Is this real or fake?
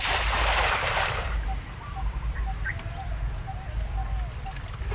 real